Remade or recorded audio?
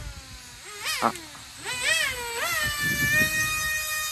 recorded